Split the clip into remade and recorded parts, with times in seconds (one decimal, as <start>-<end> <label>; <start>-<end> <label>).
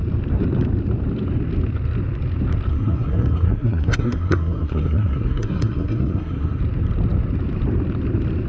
0.0-2.7 recorded; 2.7-6.6 remade; 6.6-8.5 recorded